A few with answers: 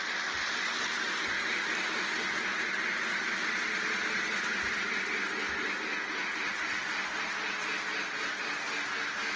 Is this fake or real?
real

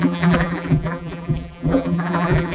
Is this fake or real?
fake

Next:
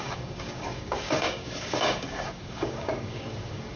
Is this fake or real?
fake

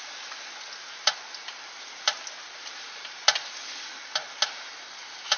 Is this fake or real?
real